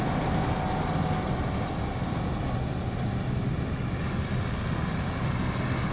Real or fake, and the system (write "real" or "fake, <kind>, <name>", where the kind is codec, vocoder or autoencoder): real